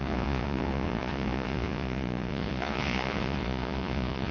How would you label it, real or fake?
fake